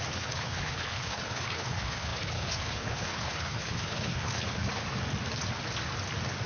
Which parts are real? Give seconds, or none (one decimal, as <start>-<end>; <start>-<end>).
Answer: 4.8-6.5